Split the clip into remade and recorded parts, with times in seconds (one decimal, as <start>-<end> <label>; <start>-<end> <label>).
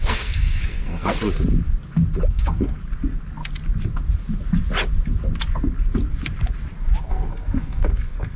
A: 0.0-1.2 remade; 1.2-2.3 recorded; 2.3-2.8 remade; 2.8-7.0 recorded; 7.0-8.4 remade